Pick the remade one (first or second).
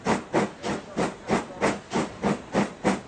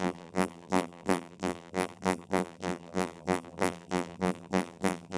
second